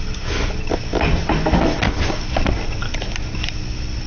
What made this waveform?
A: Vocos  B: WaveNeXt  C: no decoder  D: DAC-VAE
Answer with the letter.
C